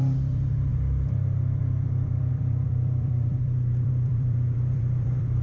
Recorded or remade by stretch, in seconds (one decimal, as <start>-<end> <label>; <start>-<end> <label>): 0.0-5.4 remade